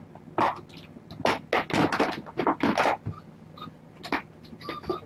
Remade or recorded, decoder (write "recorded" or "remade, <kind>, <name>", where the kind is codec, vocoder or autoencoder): recorded